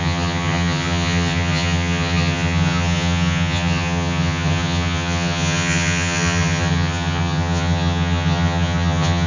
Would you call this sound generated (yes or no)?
yes